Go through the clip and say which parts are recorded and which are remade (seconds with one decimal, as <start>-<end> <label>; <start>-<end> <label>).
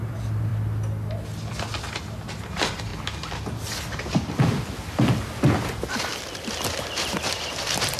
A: 0.0-0.5 remade; 0.5-2.3 recorded; 2.3-2.9 remade; 2.9-6.8 recorded; 6.8-8.0 remade